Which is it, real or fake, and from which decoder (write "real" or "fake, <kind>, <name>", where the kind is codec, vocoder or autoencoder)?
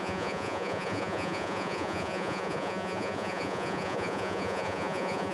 fake, vocoder, Vocos